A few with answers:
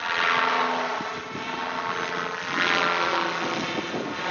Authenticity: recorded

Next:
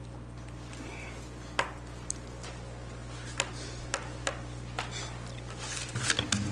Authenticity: recorded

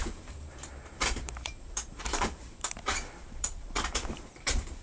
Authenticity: remade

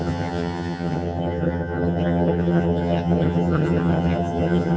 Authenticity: remade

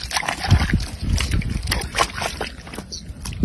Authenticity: recorded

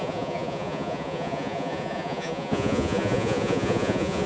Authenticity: remade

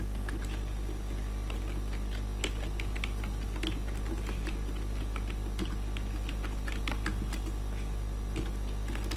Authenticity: recorded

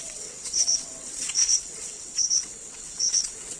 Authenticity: remade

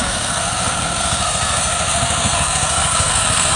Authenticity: remade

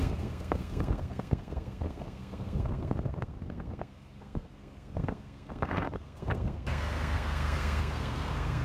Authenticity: remade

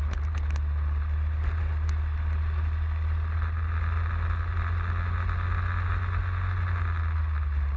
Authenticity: recorded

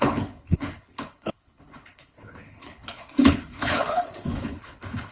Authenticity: remade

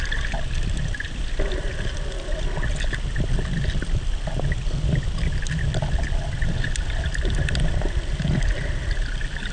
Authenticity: recorded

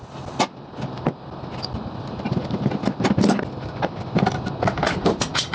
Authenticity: recorded